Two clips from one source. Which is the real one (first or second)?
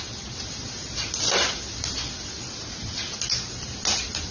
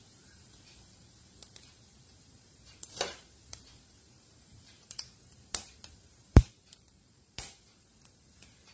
first